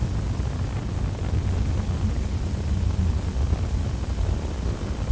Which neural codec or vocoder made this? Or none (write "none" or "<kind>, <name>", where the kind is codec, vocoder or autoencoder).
none